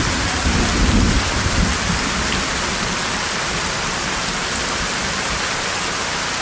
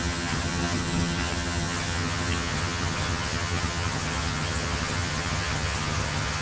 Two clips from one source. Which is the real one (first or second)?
first